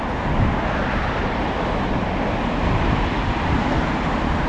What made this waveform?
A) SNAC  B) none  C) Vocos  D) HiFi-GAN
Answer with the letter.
B